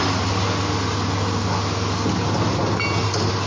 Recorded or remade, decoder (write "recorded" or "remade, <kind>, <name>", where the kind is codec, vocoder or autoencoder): recorded